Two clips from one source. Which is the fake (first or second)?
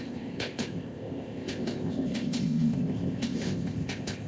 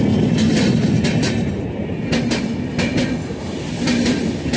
first